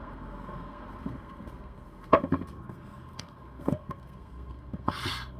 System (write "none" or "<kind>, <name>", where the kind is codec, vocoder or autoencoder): codec, SNAC